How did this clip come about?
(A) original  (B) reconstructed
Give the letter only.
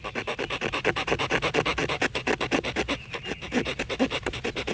A